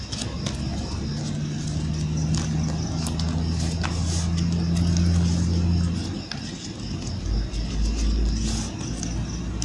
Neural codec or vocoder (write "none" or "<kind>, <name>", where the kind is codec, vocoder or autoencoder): none